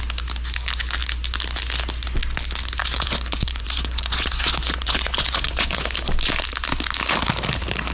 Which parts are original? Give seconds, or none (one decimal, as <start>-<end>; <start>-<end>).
0.0-2.8; 5.9-7.9